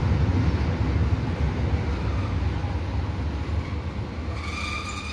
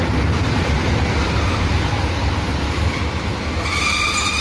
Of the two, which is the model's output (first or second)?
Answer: second